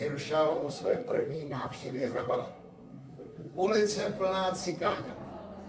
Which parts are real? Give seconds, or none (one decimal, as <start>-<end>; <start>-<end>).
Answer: 0.0-0.5; 3.9-4.6; 5.1-5.7